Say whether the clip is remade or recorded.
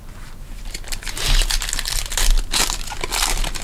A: recorded